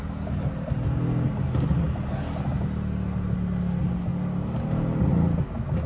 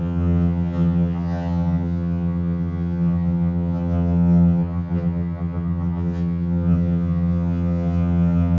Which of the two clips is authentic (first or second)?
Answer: first